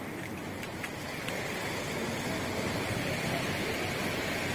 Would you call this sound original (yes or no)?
yes